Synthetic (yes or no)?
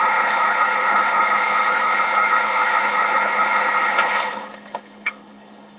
yes